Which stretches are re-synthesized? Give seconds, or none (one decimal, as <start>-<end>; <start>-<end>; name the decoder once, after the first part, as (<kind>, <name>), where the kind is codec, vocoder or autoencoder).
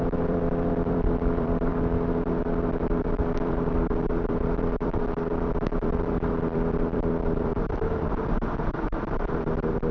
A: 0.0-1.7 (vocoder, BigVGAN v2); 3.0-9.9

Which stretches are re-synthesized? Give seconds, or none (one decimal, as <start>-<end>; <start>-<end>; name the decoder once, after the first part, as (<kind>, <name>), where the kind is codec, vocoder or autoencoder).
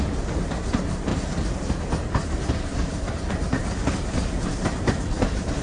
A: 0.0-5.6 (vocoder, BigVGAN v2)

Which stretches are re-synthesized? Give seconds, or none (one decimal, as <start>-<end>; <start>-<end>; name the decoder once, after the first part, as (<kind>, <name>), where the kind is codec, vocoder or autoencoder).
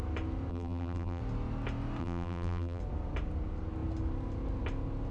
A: 0.5-1.2 (vocoder, BigVGAN v2); 2.0-2.8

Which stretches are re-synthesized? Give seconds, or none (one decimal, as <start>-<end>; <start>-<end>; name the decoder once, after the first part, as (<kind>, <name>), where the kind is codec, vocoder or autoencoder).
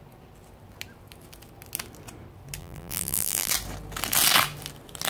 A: 2.6-3.5 (vocoder, BigVGAN v2)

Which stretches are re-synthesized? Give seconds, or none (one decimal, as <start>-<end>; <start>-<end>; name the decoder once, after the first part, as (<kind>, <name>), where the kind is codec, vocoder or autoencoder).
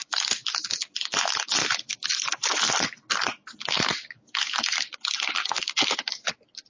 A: 0.0-0.6 (vocoder, BigVGAN v2)